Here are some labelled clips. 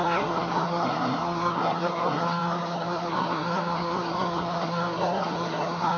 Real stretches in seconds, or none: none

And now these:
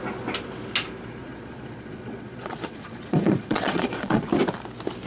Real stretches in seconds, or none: 0.0-1.2; 4.3-5.1

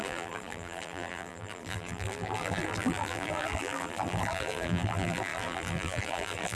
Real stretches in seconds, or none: none

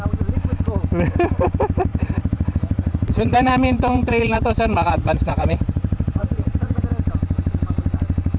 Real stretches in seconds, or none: 0.0-1.9; 6.8-8.4

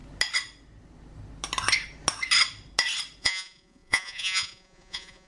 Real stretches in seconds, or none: 0.0-3.2

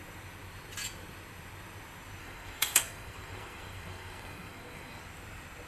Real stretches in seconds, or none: 0.0-2.2; 5.0-5.7

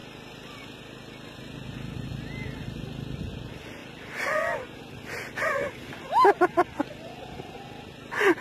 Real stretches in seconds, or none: 0.0-8.4

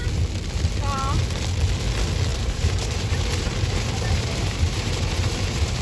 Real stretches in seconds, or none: 0.0-2.3